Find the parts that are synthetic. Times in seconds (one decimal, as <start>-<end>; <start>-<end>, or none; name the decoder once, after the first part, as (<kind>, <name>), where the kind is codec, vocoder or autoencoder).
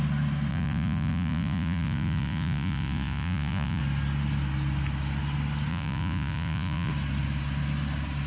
0.5-3.8 (vocoder, Vocos); 5.7-6.9